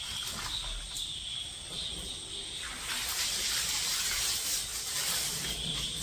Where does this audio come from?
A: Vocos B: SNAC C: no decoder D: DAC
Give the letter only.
C